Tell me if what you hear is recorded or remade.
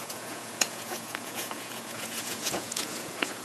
remade